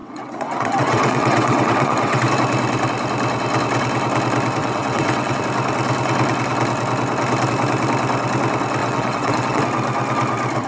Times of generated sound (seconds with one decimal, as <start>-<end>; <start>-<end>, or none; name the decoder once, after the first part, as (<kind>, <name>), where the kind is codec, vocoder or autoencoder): 0.0-2.2 (vocoder, WaveNeXt); 4.6-5.4; 8.8-9.6